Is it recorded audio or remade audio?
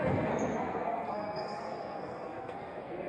remade